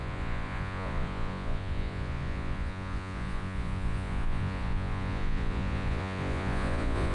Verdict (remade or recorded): remade